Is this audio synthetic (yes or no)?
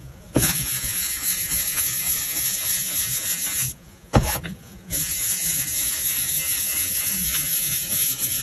yes